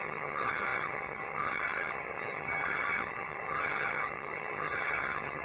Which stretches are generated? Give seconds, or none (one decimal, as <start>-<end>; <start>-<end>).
0.0-5.4

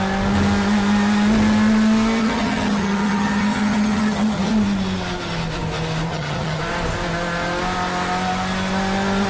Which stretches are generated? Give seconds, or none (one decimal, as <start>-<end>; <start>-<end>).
2.2-4.5; 6.1-6.6

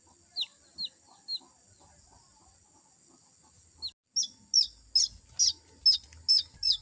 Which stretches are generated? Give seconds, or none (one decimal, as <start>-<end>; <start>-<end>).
none

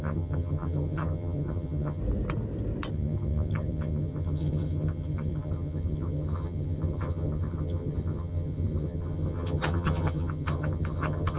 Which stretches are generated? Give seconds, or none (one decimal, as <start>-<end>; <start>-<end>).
0.0-2.0; 2.9-11.4

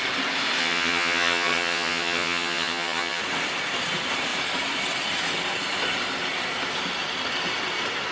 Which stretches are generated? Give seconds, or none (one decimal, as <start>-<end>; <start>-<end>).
0.6-3.2

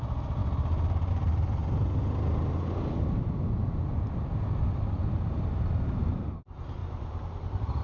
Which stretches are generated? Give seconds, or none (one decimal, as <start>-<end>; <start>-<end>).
none

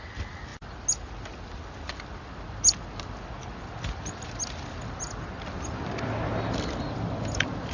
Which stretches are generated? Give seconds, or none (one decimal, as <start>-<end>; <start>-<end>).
none

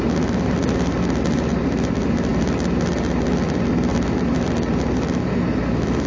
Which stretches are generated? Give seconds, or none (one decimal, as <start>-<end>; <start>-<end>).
none